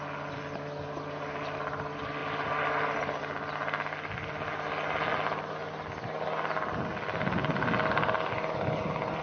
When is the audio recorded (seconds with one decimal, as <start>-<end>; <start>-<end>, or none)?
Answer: 0.0-9.2